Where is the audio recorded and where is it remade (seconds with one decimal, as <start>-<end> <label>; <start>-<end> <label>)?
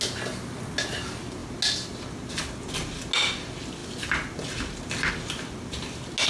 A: 0.0-6.3 recorded